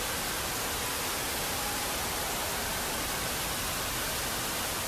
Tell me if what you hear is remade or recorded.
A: remade